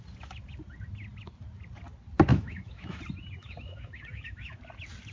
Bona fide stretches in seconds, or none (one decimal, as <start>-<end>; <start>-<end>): 0.0-2.3; 3.0-3.4; 4.6-5.1